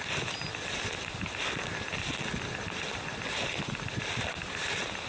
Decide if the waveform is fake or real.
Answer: real